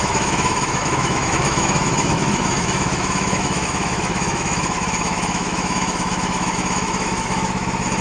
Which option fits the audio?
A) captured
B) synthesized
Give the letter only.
B